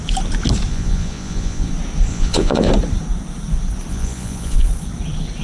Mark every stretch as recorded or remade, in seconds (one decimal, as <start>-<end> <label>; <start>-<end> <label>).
0.0-0.7 recorded; 0.7-1.7 remade; 1.7-2.1 recorded; 2.1-2.7 remade; 2.7-3.9 recorded; 3.9-4.7 remade; 4.7-5.4 recorded